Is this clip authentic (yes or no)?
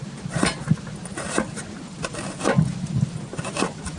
yes